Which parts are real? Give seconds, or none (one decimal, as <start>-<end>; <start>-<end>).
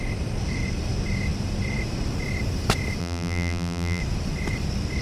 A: 0.0-3.0; 4.0-5.0